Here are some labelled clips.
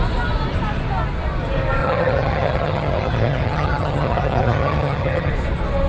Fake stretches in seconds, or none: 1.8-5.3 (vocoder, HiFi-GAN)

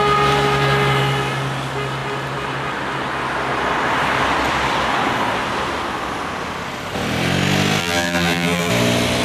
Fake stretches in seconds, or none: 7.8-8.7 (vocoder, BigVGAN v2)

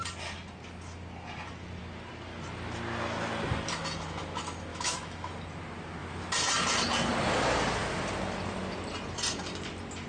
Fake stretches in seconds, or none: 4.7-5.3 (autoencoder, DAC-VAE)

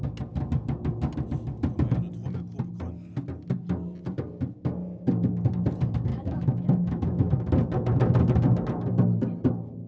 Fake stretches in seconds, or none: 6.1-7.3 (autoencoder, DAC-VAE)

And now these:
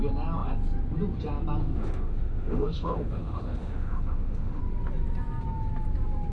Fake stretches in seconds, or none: 1.6-4.6 (autoencoder, DAC-VAE)

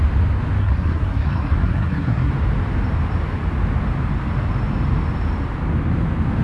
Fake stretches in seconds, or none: 0.6-2.3 (codec, SNAC)

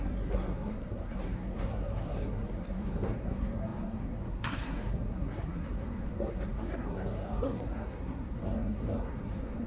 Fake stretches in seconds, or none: 0.0-9.7 (codec, SNAC)